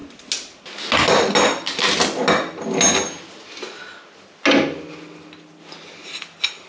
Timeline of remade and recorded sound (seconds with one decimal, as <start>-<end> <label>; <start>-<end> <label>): 0.0-6.7 recorded